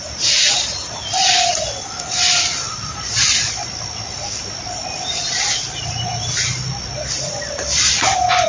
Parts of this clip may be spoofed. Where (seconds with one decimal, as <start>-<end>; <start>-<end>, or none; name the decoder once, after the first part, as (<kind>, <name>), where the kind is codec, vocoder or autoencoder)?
none